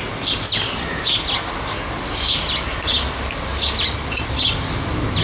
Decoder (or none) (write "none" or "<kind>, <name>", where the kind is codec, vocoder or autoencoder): none